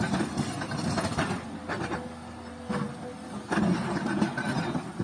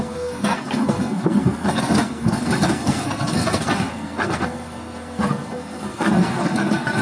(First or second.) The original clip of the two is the first